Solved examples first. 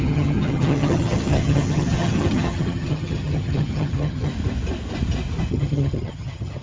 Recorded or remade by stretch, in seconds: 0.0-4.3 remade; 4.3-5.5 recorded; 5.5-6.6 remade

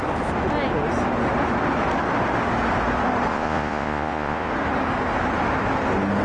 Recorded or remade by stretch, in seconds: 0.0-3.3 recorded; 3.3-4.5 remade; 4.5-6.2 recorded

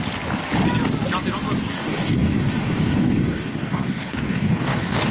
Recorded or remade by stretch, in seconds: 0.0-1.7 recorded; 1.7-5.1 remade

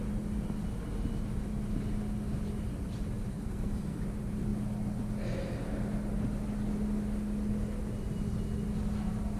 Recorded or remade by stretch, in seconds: 0.0-3.3 recorded; 3.3-4.0 remade; 4.0-9.4 recorded

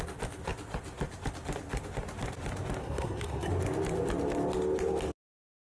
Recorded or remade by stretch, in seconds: 0.0-2.8 recorded; 2.8-3.5 remade; 3.5-5.7 recorded

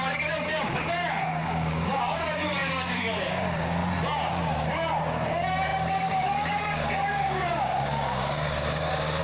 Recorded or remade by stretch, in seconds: 0.0-3.8 remade; 3.8-4.4 recorded; 4.4-9.2 remade

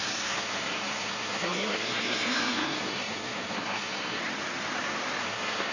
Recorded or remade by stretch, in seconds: 0.0-4.2 remade; 4.2-5.2 recorded; 5.2-5.7 remade